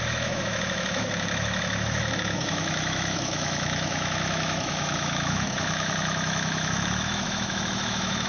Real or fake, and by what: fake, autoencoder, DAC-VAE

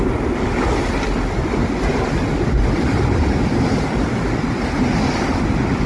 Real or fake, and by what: real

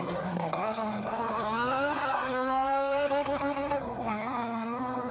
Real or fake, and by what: fake, codec, SNAC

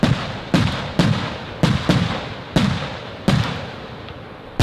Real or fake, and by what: real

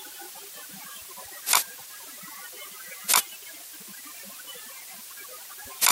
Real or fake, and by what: real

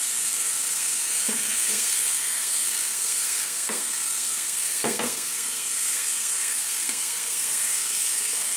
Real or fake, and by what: fake, codec, SNAC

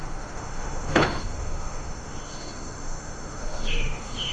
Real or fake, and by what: fake, autoencoder, DAC-VAE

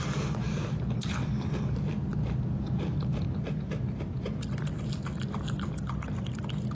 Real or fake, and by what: real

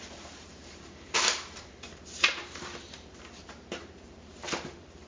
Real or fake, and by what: fake, vocoder, BigVGAN v2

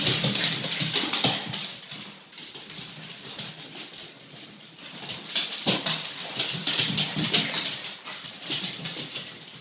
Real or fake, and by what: fake, vocoder, BigVGAN v2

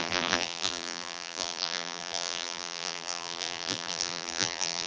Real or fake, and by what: fake, vocoder, BigVGAN v2